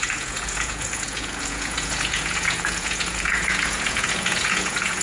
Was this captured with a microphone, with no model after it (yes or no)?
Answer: no